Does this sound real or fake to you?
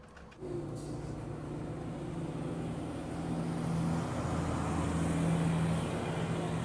real